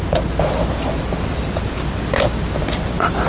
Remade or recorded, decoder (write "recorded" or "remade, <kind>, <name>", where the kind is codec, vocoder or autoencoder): recorded